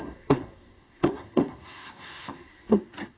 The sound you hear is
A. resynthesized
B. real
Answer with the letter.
A